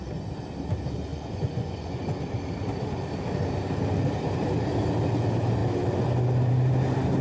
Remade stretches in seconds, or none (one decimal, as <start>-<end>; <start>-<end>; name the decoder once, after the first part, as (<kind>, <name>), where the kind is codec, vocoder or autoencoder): 1.1-2.2 (vocoder, Vocos)